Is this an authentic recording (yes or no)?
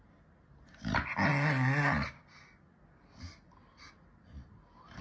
yes